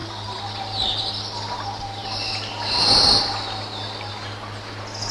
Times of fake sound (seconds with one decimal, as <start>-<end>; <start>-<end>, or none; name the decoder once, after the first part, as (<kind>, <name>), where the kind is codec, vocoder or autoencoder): none